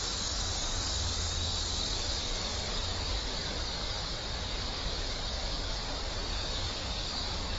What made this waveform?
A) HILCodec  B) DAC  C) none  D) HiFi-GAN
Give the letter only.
B